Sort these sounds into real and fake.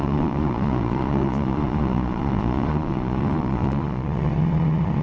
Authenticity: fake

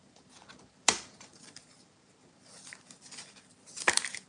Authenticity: real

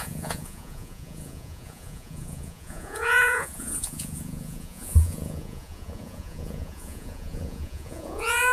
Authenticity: fake